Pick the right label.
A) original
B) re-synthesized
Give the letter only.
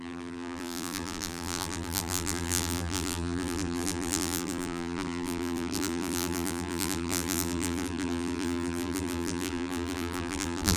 B